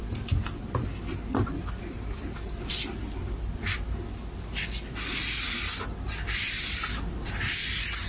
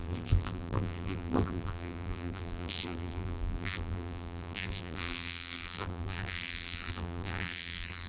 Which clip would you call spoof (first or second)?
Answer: second